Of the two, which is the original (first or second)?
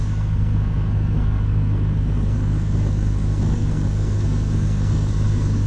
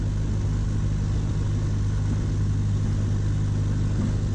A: second